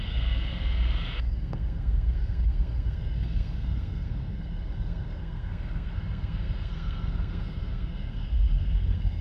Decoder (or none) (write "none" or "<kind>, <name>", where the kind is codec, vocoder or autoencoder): codec, SNAC